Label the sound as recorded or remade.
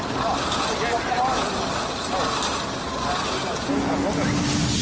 recorded